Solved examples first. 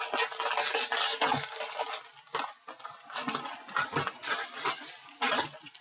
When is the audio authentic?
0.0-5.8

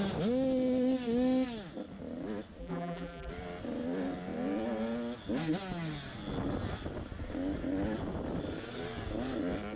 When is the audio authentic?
0.0-2.6; 3.3-9.8

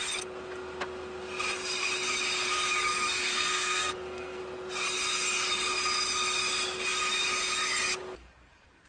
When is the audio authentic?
0.0-2.9; 4.4-8.9

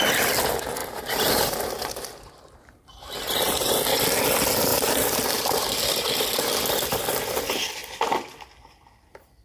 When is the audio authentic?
0.0-0.8; 3.7-4.7; 5.7-9.4

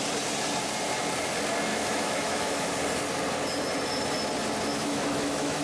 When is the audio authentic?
0.0-1.7; 2.7-4.7

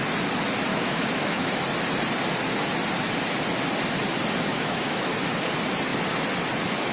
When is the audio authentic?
0.0-0.7; 1.5-4.5; 5.1-6.9

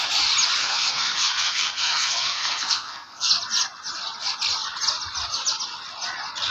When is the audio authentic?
0.0-0.6; 3.3-6.5

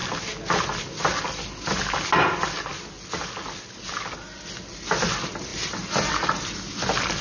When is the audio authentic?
0.0-7.2